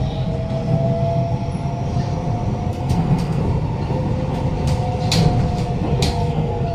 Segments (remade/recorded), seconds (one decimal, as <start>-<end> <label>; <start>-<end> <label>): 0.0-2.7 recorded; 2.7-3.4 remade; 3.4-6.2 recorded; 6.2-6.7 remade

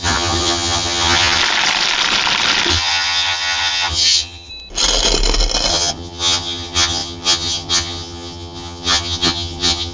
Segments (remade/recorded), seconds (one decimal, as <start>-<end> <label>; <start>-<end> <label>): 0.0-1.4 remade; 1.4-2.7 recorded; 2.7-4.5 remade; 4.5-5.7 recorded; 5.7-9.9 remade

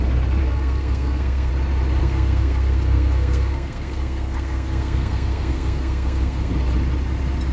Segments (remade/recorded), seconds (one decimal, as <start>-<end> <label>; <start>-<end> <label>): 0.0-0.4 recorded; 0.4-1.5 remade; 1.5-2.0 recorded; 2.0-6.5 remade; 6.5-7.5 recorded

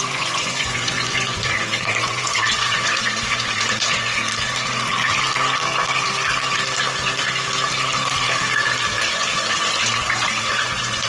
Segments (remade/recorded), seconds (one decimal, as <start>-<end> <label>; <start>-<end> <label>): 0.0-4.2 remade; 4.2-9.0 recorded; 9.0-11.1 remade

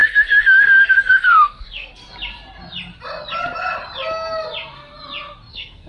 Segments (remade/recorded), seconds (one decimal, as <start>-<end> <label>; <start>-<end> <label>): 0.0-2.0 remade; 2.0-5.5 recorded; 5.5-5.9 remade

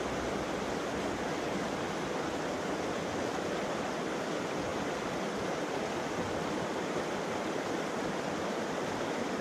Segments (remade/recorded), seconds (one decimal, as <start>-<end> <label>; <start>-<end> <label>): 0.0-9.4 recorded

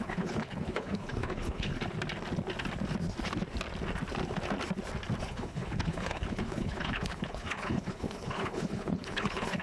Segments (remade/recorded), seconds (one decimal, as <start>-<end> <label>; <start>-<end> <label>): 0.0-1.7 remade; 1.7-5.2 recorded; 5.2-9.6 remade

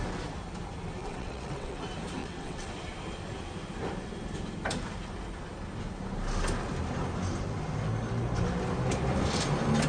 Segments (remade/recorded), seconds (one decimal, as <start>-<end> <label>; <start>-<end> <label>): 0.0-1.0 recorded; 1.0-1.8 remade; 1.8-2.2 recorded; 2.2-2.7 remade; 2.7-9.9 recorded